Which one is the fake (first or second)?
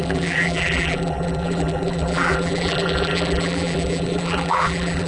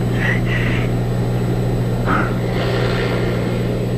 first